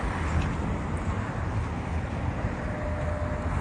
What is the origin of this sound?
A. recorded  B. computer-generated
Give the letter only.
A